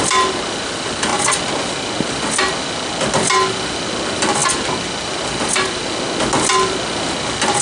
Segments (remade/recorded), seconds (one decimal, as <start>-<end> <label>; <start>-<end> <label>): 0.0-7.6 recorded